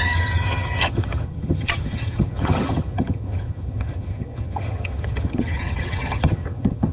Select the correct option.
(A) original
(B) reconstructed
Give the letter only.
B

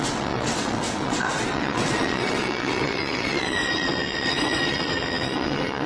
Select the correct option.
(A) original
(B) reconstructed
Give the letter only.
B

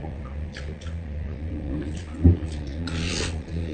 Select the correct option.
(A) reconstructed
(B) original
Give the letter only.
A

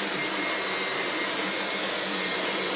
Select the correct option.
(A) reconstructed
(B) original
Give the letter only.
B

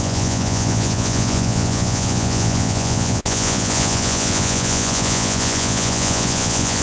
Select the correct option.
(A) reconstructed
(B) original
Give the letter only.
A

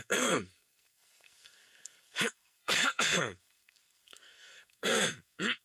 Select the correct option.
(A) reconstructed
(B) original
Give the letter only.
A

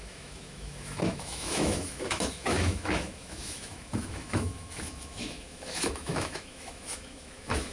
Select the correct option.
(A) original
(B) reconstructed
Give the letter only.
B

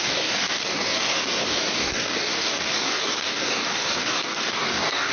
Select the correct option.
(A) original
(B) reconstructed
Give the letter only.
B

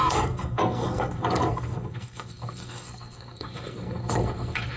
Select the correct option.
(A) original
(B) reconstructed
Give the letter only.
B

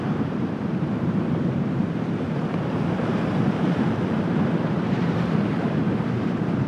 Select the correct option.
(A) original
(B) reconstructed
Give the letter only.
B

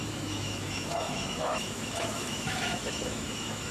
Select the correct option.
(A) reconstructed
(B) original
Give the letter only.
A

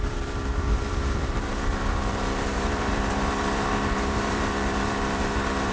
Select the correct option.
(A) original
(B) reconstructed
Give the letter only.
B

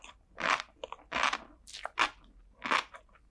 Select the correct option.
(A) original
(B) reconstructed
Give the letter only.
A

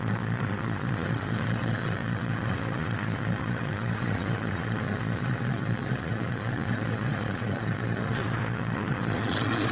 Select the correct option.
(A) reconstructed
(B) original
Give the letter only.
A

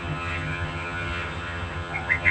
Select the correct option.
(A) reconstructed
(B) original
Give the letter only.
A